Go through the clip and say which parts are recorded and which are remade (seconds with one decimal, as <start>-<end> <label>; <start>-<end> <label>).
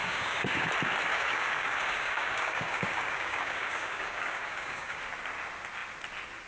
0.0-0.7 remade; 0.7-1.1 recorded; 1.1-5.0 remade; 5.0-6.5 recorded